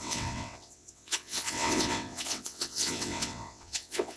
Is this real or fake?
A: fake